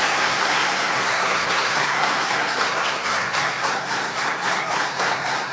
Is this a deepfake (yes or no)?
yes